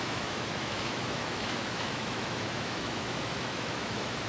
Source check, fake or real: fake